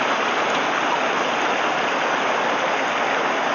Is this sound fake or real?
real